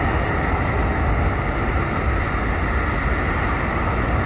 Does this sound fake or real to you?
real